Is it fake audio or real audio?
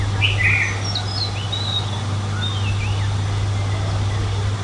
real